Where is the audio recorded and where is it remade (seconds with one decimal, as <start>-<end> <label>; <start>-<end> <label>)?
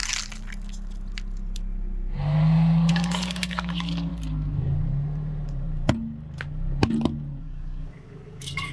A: 0.0-2.9 recorded; 2.9-4.1 remade; 4.1-7.4 recorded; 7.4-8.7 remade